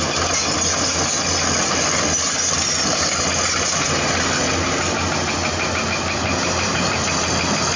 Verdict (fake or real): real